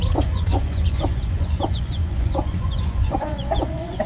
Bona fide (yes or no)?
no